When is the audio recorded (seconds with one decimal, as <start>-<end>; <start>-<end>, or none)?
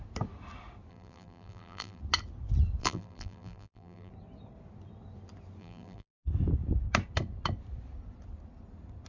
0.0-0.9; 2.0-2.8; 4.1-5.6; 6.1-9.1